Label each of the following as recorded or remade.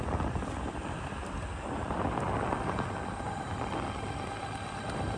recorded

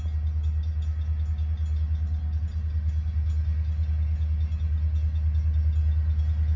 recorded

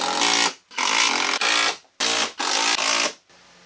recorded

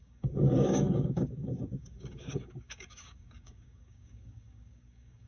remade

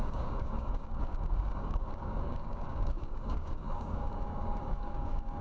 remade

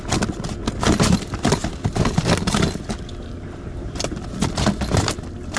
recorded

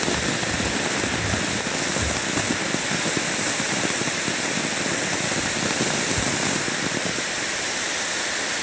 recorded